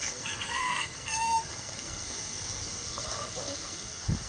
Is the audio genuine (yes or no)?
no